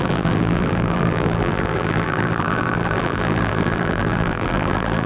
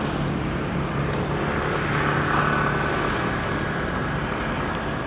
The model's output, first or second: first